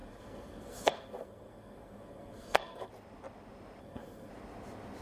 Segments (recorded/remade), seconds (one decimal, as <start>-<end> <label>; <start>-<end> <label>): 0.0-2.9 remade; 2.9-3.8 recorded; 3.8-4.3 remade; 4.3-5.0 recorded